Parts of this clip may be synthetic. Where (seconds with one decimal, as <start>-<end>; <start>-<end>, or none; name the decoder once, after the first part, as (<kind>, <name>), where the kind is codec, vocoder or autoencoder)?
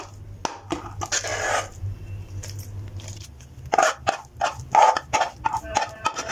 1.3-5.1 (vocoder, BigVGAN v2)